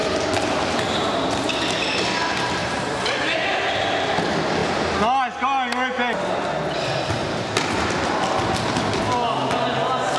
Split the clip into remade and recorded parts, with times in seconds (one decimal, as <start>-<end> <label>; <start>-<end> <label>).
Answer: 0.0-2.6 recorded; 2.6-3.6 remade; 3.6-10.2 recorded